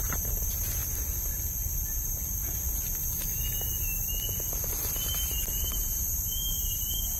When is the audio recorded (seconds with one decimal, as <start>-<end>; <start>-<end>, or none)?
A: 0.8-5.1

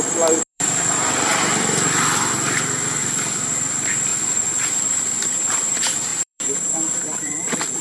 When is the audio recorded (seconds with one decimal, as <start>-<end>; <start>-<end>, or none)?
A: 4.1-4.9

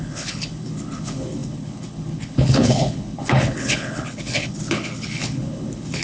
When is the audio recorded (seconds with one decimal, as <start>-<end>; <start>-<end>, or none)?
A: none

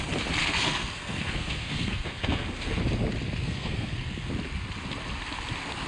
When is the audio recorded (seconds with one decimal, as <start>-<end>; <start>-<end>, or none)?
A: 0.0-0.4; 2.8-3.4; 4.3-5.9

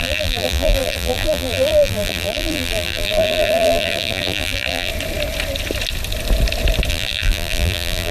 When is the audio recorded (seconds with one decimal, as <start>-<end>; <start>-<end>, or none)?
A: 4.9-6.9

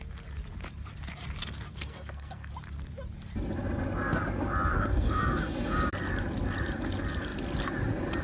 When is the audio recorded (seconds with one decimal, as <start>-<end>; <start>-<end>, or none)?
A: 0.0-1.7; 2.5-4.7; 5.4-8.2